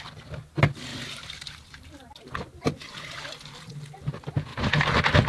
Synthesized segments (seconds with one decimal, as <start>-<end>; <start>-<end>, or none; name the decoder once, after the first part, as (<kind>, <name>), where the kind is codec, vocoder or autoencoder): 0.9-4.1 (vocoder, BigVGAN v2)